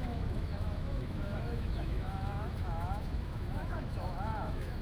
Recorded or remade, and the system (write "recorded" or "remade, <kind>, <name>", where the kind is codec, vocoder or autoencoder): remade, autoencoder, DAC-VAE